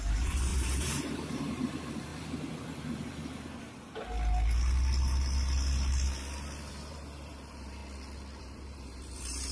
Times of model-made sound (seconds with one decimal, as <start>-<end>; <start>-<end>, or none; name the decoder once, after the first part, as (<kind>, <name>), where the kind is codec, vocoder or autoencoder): 0.0-2.1 (vocoder, BigVGAN v2); 6.7-7.8; 8.4-9.5